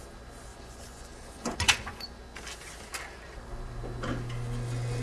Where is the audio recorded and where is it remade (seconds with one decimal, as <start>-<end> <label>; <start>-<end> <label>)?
0.0-0.5 recorded; 0.5-2.0 remade; 2.0-5.0 recorded